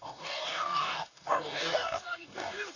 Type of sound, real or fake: fake